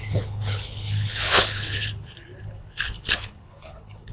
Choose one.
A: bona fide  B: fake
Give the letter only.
B